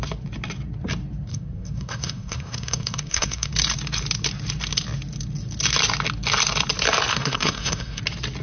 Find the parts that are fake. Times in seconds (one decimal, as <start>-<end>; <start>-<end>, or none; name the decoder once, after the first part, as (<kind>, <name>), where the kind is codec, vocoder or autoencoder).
1.3-3.5 (codec, SNAC); 7.1-8.0